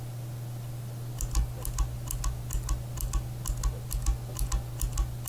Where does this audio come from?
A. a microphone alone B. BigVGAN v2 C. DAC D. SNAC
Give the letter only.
A